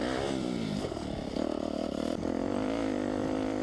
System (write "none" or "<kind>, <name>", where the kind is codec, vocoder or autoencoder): none